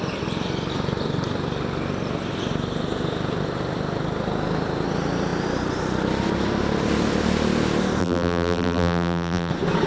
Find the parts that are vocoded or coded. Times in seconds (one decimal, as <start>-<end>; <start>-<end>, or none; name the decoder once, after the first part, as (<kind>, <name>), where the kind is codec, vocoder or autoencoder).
8.0-9.5 (vocoder, BigVGAN v2)